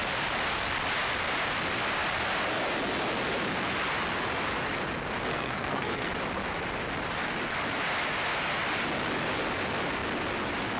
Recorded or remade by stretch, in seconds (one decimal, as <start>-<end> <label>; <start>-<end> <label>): 0.0-5.3 recorded; 5.3-6.1 remade; 6.1-10.8 recorded